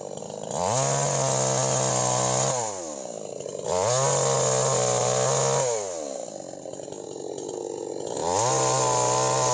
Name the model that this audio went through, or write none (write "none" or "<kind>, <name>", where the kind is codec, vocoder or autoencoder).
none